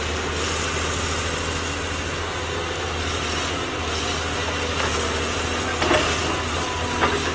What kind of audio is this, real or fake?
real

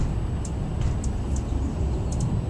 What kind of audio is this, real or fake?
real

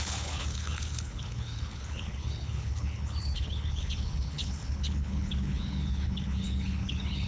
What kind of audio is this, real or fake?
fake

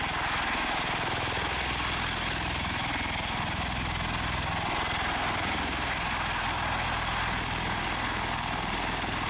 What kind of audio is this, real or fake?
real